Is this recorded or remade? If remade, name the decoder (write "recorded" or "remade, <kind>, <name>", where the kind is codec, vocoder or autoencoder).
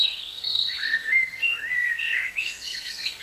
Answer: remade, codec, SNAC